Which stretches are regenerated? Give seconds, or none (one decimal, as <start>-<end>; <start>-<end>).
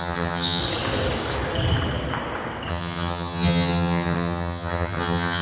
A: 0.0-0.6; 2.7-5.4